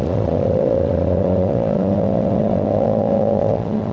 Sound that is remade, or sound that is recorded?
remade